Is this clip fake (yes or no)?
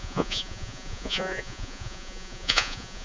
yes